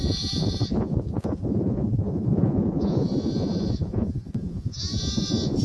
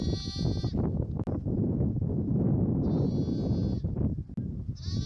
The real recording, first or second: second